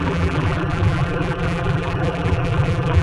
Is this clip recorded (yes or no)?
no